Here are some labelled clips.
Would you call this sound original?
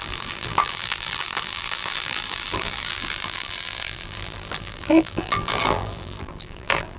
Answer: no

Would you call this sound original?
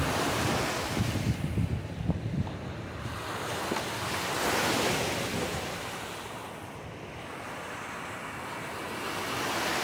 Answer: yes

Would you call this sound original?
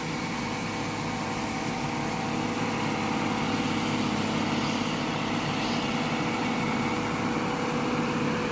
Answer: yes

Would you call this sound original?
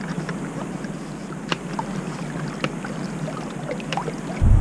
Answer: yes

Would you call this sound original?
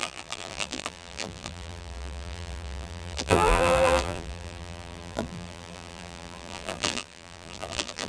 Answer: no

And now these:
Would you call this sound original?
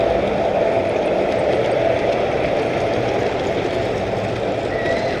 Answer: no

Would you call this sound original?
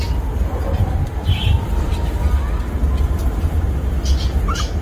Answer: yes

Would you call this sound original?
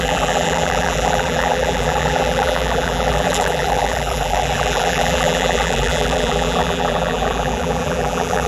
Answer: no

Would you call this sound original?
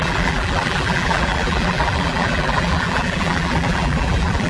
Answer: no